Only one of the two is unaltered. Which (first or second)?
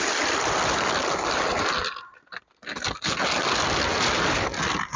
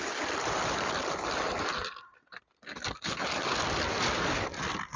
first